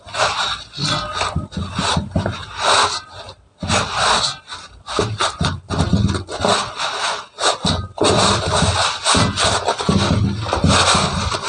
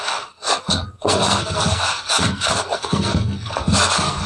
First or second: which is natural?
first